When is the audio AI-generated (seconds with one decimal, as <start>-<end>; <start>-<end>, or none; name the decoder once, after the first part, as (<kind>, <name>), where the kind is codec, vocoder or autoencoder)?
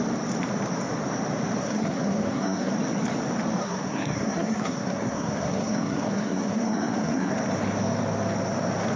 1.6-2.7 (codec, SNAC); 3.6-7.3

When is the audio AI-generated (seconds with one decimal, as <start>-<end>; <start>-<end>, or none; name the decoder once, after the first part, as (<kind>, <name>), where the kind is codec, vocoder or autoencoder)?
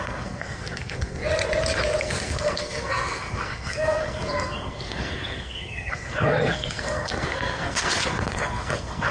0.0-1.2 (codec, SNAC); 2.0-9.1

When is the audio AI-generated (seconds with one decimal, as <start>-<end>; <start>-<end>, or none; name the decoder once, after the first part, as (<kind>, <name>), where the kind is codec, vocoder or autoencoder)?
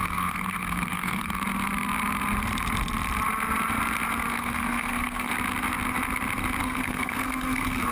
0.0-1.4 (codec, SNAC); 4.3-5.3; 6.6-7.9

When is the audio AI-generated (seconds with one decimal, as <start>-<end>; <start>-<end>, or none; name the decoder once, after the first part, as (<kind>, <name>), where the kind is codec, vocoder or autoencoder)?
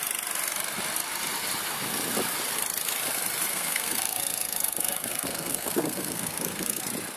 3.5-6.8 (codec, SNAC)